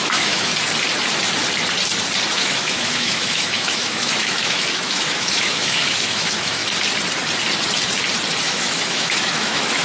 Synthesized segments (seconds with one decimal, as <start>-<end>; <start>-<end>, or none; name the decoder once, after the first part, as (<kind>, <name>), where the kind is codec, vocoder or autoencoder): 0.0-0.5 (autoencoder, DAC-VAE); 2.3-6.6; 8.4-9.8